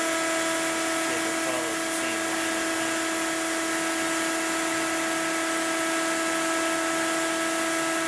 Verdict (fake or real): real